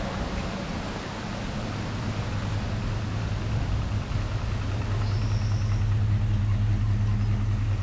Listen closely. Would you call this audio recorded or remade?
recorded